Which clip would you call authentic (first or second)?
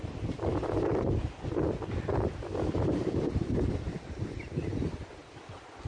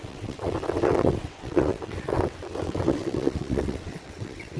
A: first